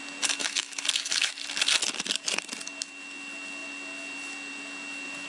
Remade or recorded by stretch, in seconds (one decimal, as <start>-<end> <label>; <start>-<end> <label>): 0.0-0.4 recorded; 0.4-1.3 remade; 1.3-5.3 recorded